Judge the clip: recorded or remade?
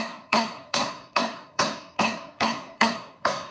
remade